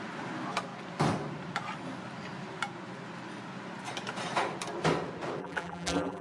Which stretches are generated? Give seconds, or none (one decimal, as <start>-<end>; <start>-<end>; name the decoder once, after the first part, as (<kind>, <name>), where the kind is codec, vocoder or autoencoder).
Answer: 5.4-6.2 (vocoder, BigVGAN v2)